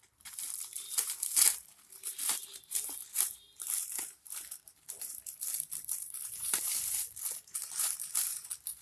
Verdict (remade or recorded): remade